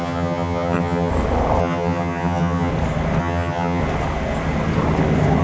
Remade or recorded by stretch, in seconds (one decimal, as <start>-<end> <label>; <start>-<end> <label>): 0.0-1.1 remade; 1.1-1.6 recorded; 1.6-2.7 remade; 2.7-3.2 recorded; 3.2-3.8 remade; 3.8-5.4 recorded